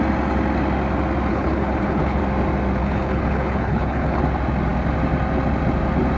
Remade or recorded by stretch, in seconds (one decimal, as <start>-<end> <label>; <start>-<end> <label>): 0.0-1.3 recorded; 1.3-2.2 remade; 2.2-2.8 recorded; 2.8-4.2 remade; 4.2-6.2 recorded